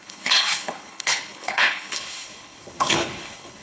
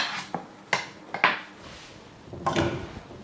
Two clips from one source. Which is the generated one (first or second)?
first